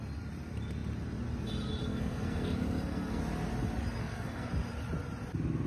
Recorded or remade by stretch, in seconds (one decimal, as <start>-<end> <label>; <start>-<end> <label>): 0.0-1.9 recorded; 1.9-3.2 remade; 3.2-4.0 recorded; 4.0-4.5 remade; 4.5-5.7 recorded